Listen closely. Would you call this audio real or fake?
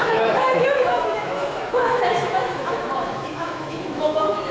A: fake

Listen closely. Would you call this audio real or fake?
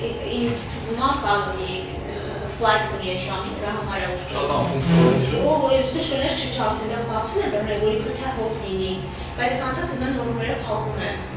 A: real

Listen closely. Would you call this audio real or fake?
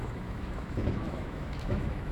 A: fake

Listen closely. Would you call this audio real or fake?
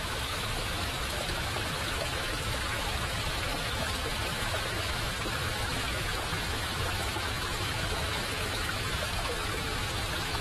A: fake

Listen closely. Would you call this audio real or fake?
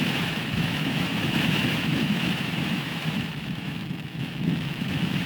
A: fake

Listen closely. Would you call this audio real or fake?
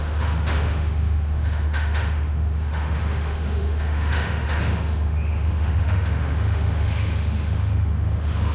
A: fake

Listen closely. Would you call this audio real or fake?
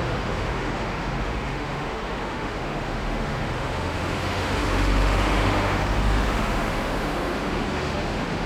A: fake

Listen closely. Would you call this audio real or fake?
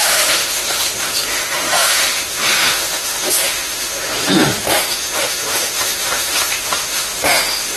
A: fake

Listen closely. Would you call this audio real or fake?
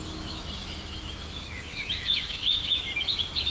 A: fake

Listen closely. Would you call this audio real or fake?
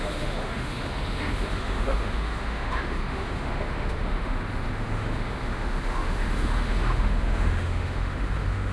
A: fake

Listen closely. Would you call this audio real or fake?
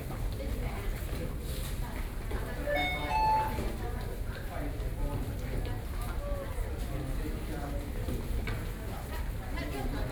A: real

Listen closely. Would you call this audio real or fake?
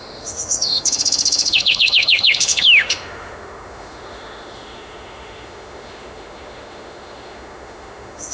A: fake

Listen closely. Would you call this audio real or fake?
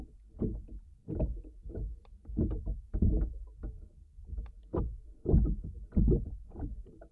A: real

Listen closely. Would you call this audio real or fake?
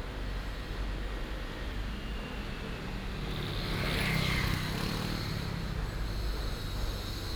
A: real